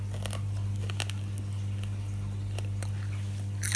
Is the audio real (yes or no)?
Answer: yes